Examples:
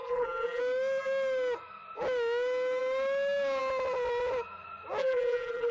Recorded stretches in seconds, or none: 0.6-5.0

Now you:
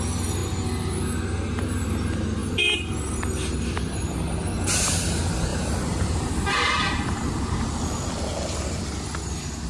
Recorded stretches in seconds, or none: 0.0-5.5; 7.7-9.7

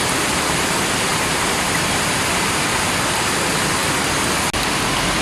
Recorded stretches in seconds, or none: 0.0-1.1; 2.6-5.2

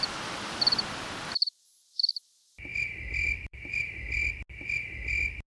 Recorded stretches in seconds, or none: 0.0-2.7; 4.3-5.5

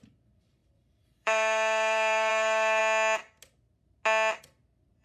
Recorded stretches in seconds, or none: 2.8-4.4

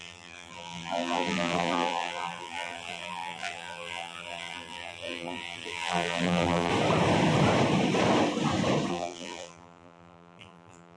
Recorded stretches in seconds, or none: 6.7-8.9